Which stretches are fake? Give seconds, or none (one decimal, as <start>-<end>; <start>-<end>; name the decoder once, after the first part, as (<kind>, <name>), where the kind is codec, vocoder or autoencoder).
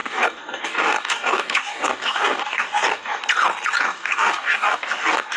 0.0-3.2 (codec, DAC); 3.8-5.4